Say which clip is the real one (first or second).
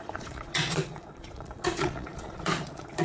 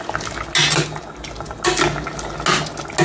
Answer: second